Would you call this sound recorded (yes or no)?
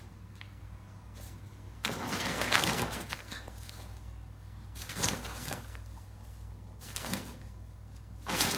no